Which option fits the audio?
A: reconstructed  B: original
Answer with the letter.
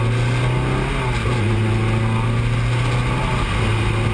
B